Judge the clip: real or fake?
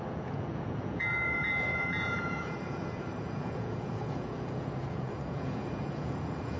fake